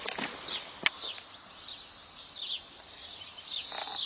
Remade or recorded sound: recorded